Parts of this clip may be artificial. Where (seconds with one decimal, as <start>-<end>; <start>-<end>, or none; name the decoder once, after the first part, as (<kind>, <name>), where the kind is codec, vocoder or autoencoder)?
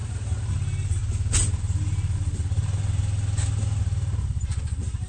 0.0-1.0 (vocoder, BigVGAN v2); 1.6-2.6; 4.3-5.1